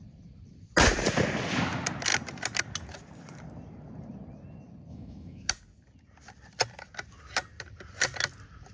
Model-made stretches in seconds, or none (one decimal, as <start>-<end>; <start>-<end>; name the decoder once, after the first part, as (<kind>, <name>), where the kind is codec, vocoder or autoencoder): 4.9-5.5 (autoencoder, DAC-VAE)